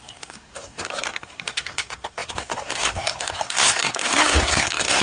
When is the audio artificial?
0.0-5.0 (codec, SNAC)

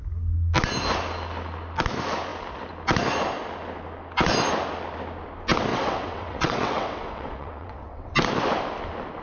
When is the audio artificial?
5.7-8.1 (vocoder, WaveNeXt)